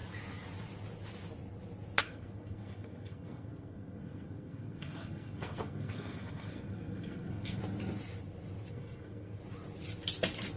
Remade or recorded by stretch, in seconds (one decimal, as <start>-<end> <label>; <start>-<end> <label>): 0.0-2.0 recorded; 2.0-7.6 remade; 7.6-8.7 recorded; 8.7-9.4 remade; 9.4-10.6 recorded